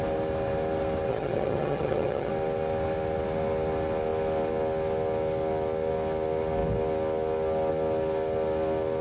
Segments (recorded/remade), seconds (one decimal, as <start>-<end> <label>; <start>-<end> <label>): 0.0-1.1 recorded; 1.1-2.3 remade; 2.3-9.0 recorded